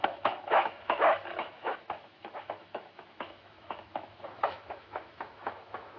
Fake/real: fake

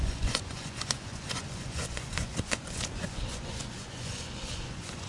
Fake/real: fake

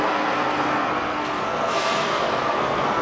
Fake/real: fake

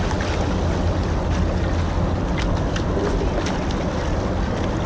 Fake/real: real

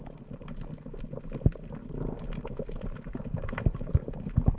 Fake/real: real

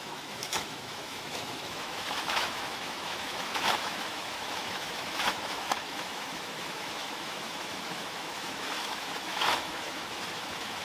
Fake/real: fake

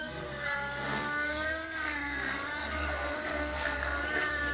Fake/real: fake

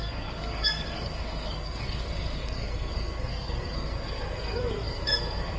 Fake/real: fake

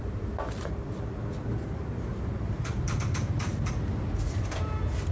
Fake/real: fake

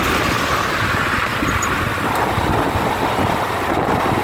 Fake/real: real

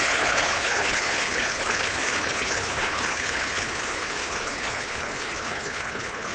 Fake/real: fake